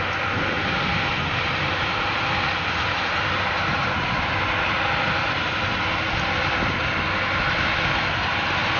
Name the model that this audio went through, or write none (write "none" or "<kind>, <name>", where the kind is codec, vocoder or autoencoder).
none